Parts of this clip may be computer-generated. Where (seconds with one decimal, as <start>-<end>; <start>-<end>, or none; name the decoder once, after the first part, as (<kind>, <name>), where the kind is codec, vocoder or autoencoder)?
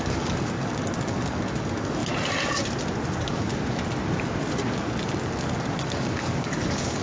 0.0-2.0 (codec, DAC); 3.1-3.5; 5.6-7.0